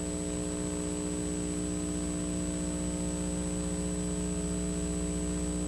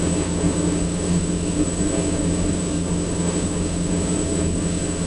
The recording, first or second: first